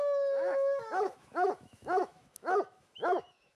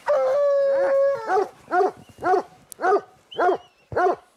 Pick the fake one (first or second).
first